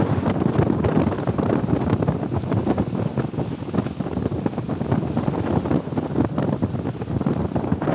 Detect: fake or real fake